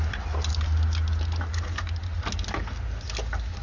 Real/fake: real